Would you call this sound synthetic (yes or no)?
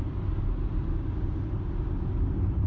no